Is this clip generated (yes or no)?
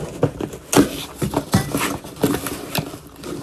no